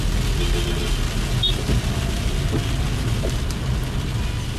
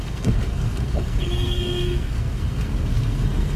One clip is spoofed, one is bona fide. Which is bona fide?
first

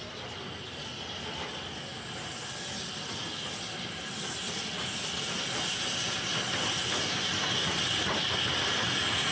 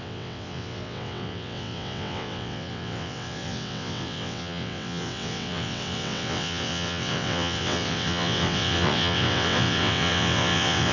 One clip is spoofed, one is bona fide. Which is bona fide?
first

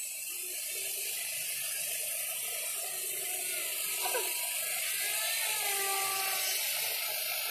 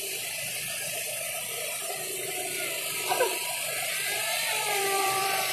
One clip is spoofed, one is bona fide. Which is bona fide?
first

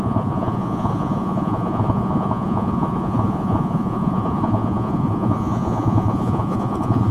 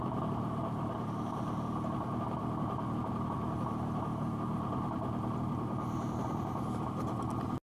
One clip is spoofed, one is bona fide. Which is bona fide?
second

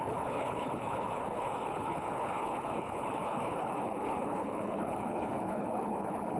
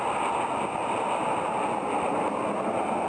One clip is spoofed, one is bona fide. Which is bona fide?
second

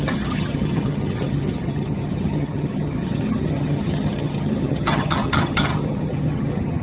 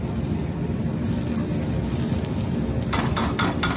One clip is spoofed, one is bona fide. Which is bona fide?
second